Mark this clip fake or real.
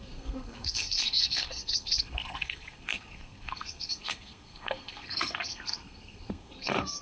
fake